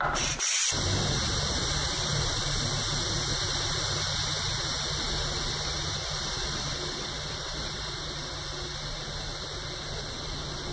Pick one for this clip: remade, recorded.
recorded